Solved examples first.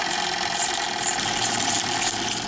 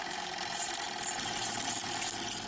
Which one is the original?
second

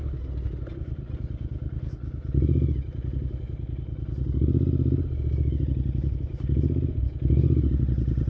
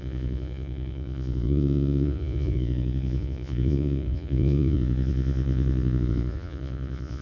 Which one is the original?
first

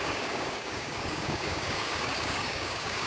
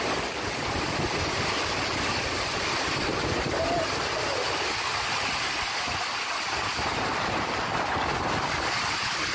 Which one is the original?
second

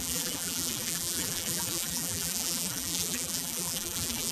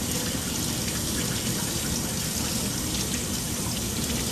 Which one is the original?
second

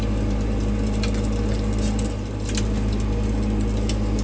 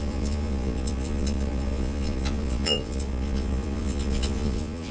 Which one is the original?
first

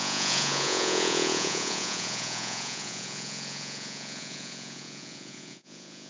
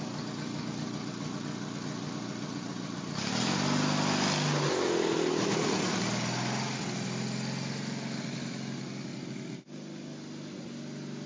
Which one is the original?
second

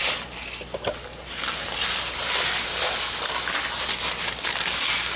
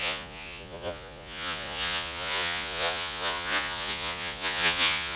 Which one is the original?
first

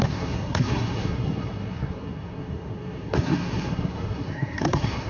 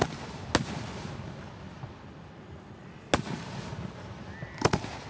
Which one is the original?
second